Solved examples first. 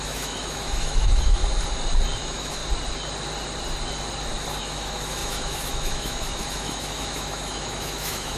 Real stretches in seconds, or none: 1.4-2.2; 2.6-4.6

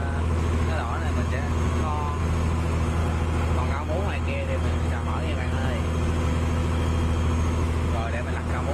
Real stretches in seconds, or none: 3.0-3.6; 5.6-6.3

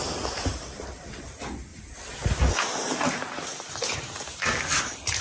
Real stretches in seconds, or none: 0.0-5.2

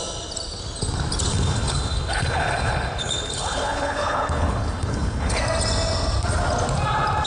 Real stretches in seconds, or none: 0.0-1.3; 5.4-7.3

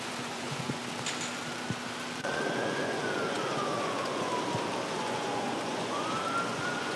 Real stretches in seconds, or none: 0.8-2.2; 4.3-4.9